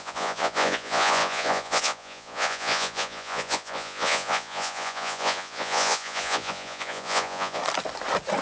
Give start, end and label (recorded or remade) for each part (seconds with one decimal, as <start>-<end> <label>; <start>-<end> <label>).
0.0-7.6 remade; 7.6-8.4 recorded